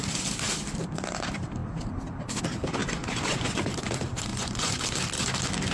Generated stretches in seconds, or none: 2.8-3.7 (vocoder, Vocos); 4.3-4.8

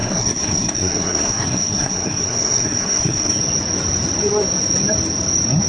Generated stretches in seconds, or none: 0.0-3.4 (codec, SNAC)

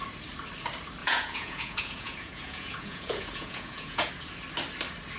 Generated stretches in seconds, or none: 1.0-4.1 (vocoder, Vocos)